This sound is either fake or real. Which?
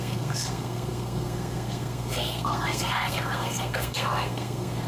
fake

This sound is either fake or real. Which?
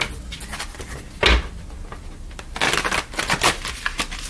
real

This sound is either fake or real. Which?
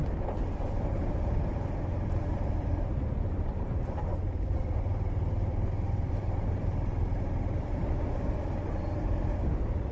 real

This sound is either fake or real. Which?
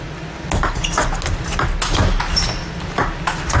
real